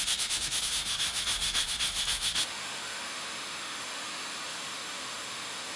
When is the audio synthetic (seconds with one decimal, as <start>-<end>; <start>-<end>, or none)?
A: 0.0-5.8